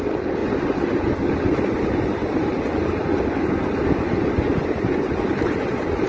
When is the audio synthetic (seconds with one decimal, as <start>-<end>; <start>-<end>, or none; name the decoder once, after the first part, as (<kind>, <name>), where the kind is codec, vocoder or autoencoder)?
none